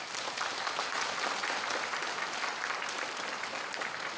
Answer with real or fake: real